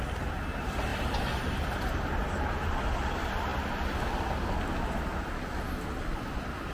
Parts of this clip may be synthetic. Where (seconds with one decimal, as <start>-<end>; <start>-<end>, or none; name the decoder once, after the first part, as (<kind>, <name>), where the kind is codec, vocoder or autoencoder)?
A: 0.9-2.1 (vocoder, BigVGAN v2)